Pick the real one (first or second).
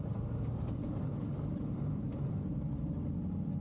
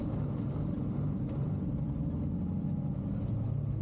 second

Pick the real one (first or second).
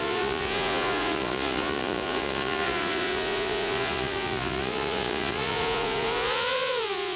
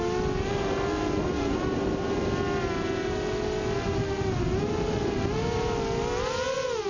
second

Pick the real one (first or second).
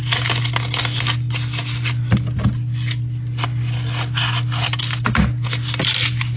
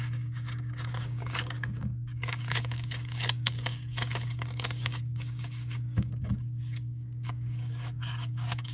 first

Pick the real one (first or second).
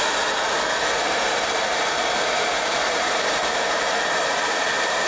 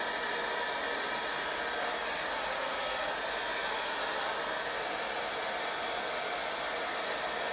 second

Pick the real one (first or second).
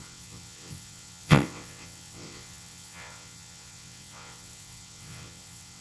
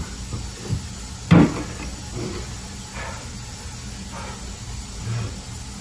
second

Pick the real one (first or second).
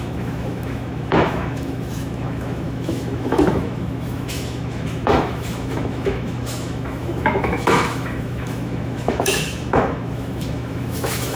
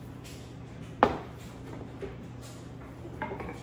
second